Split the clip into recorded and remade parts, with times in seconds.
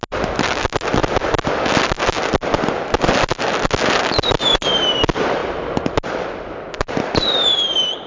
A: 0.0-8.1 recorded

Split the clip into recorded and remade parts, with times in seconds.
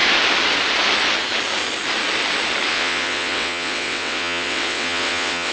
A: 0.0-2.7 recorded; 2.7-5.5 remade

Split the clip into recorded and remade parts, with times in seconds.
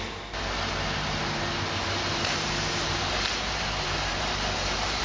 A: 0.0-1.8 recorded; 1.8-5.0 remade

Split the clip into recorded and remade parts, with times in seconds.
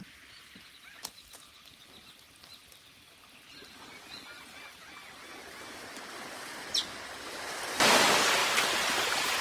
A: 0.0-8.4 recorded; 8.4-9.4 remade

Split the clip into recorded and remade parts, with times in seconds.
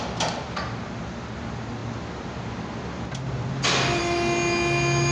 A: 0.0-5.1 recorded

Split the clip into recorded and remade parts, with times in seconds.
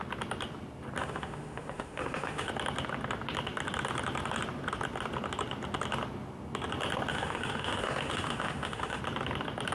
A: 0.0-1.0 recorded; 1.0-2.5 remade; 2.5-7.1 recorded; 7.1-9.0 remade; 9.0-9.7 recorded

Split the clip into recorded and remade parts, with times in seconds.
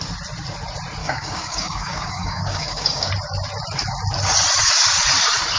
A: 0.0-1.0 recorded; 1.0-3.1 remade; 3.1-5.6 recorded